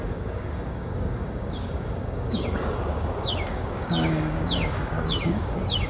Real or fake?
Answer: fake